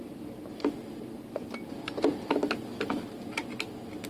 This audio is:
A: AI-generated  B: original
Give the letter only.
B